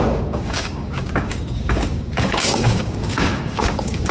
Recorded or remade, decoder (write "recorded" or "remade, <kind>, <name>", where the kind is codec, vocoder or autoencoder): remade, codec, DAC